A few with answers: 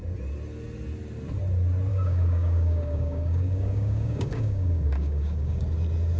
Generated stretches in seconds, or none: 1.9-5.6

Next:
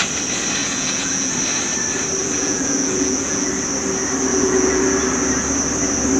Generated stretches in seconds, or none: 0.6-1.3; 2.2-3.5; 4.3-4.8

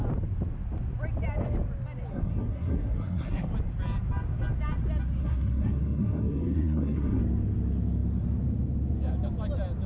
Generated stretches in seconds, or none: 2.1-3.5; 5.2-7.2

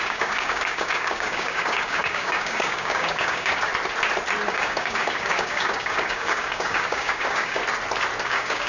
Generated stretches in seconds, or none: 0.0-3.7; 4.5-7.6; 8.2-8.7

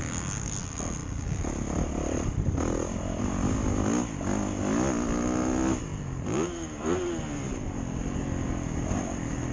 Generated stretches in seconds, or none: none

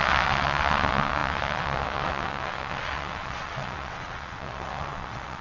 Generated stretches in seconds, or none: 0.0-5.4

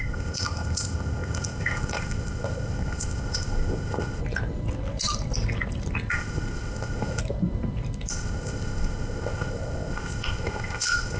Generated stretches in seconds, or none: 0.0-4.2; 6.1-7.2; 8.1-11.2